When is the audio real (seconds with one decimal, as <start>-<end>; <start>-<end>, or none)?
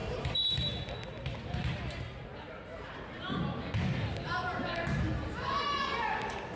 0.5-6.6